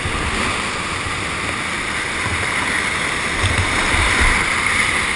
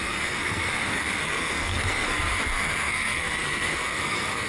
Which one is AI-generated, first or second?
second